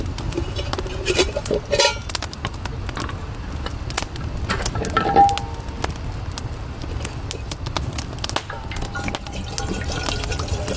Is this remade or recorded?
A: recorded